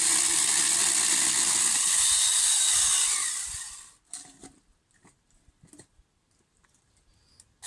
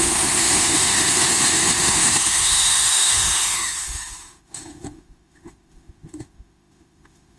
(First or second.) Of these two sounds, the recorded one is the first